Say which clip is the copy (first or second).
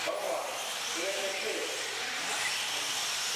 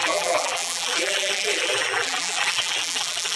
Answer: second